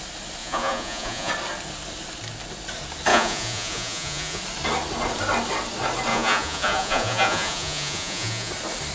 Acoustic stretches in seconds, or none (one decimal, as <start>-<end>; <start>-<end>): 0.0-0.4; 1.3-3.1; 4.4-6.1; 8.5-8.9